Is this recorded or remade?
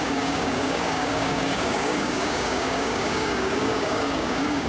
remade